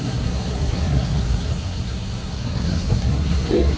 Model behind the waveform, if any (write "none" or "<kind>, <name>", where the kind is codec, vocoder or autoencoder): codec, SNAC